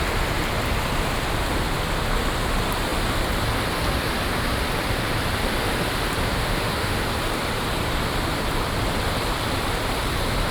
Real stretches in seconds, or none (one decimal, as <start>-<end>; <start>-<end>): 0.0-6.2; 7.0-10.5